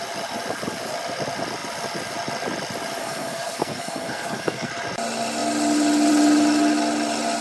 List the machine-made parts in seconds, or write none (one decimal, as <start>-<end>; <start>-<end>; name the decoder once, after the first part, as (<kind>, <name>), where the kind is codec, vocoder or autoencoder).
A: 3.0-4.7 (codec, SNAC)